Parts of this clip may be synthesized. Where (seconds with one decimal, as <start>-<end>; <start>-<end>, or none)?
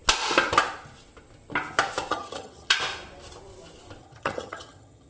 2.1-2.7; 4.0-5.1